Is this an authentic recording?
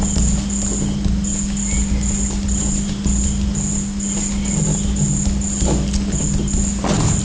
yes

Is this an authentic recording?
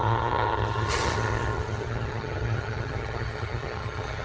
no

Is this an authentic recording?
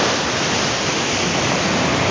yes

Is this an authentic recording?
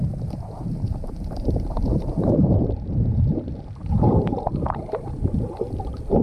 no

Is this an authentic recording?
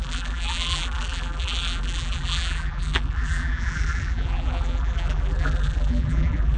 no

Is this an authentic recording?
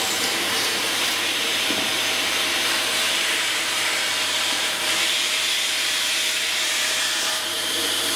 no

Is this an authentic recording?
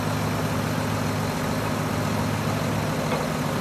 yes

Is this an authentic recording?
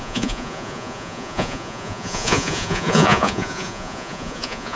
no